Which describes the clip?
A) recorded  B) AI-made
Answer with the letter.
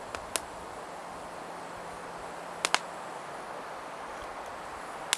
A